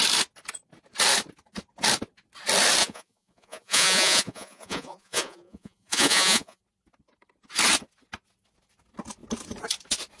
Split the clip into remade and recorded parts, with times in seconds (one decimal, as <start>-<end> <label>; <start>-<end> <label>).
0.0-2.8 recorded; 2.8-6.6 remade; 6.6-10.2 recorded